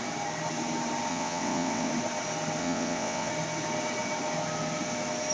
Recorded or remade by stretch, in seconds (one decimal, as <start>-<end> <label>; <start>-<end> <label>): 0.0-1.1 recorded; 1.1-1.9 remade; 1.9-2.6 recorded; 2.6-3.3 remade; 3.3-5.3 recorded